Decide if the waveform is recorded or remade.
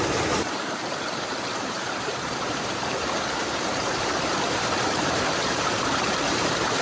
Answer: remade